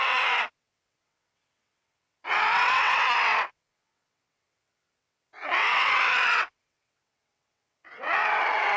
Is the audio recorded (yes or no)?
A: no